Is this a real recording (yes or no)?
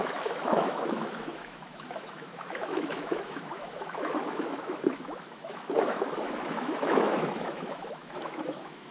no